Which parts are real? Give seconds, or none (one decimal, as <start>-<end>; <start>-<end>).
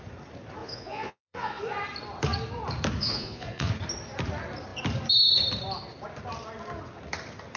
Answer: 0.0-0.6; 1.6-3.0; 3.7-7.6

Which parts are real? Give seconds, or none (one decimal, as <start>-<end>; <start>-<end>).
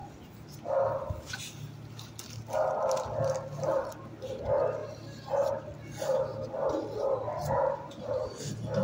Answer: 0.0-8.8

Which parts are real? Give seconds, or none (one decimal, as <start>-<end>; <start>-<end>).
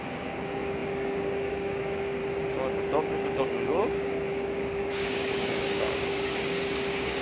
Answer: 2.2-3.0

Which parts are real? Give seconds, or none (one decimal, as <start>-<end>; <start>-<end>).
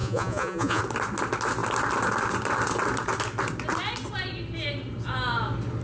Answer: 0.8-5.8